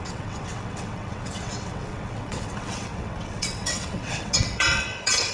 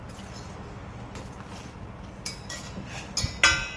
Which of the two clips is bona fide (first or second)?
second